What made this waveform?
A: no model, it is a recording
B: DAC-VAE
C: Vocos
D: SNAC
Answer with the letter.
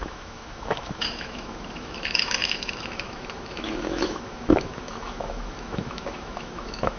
B